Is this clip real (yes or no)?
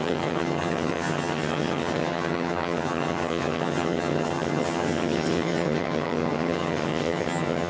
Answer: no